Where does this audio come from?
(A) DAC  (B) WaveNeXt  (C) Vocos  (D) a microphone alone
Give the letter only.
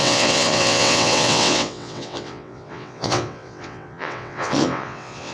B